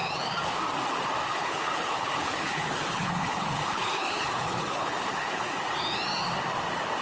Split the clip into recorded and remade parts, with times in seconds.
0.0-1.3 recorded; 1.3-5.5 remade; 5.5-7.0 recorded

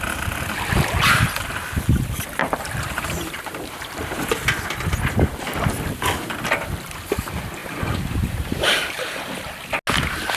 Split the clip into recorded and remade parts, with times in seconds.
0.0-2.4 recorded; 2.4-4.2 remade; 4.2-7.6 recorded; 7.6-9.2 remade; 9.2-10.4 recorded

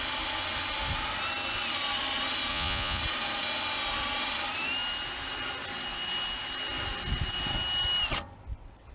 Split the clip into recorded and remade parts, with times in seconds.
0.0-2.5 recorded; 2.5-3.0 remade; 3.0-8.9 recorded